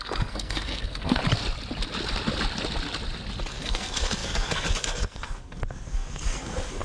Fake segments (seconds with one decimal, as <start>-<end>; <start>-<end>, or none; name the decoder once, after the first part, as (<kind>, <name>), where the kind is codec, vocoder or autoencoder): 0.0-1.2 (codec, SNAC); 3.5-6.8